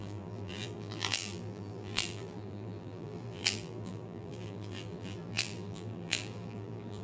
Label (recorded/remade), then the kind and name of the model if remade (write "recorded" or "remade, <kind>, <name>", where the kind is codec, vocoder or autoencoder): remade, vocoder, BigVGAN v2